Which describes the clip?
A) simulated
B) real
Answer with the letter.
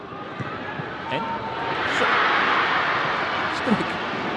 B